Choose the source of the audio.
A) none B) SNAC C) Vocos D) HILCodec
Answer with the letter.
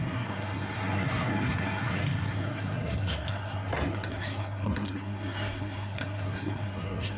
B